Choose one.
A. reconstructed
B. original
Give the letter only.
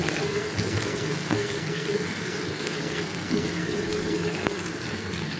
A